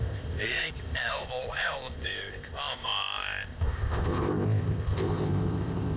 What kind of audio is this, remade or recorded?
remade